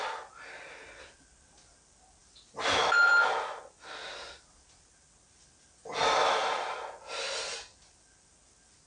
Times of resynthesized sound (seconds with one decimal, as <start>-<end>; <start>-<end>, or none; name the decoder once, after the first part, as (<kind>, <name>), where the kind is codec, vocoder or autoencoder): none